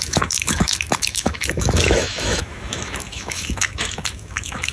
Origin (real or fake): fake